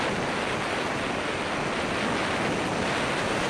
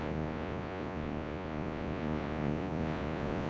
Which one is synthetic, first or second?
second